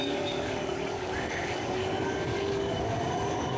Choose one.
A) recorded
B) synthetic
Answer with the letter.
B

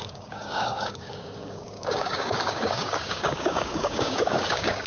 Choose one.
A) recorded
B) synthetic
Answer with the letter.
B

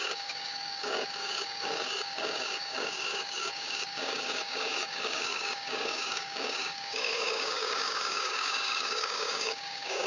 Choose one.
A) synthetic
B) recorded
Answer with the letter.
A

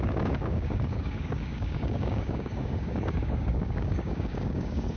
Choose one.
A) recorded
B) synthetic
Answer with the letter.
B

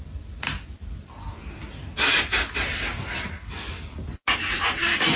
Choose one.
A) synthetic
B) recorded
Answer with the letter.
B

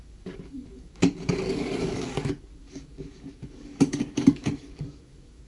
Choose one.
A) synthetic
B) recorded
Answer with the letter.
A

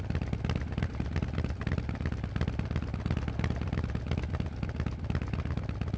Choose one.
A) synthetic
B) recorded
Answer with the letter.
B